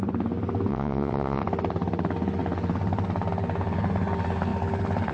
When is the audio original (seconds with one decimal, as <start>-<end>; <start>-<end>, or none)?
0.0-0.7; 1.4-5.1